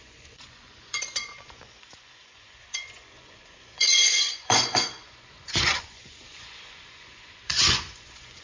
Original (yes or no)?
no